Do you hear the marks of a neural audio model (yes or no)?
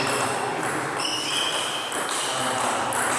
no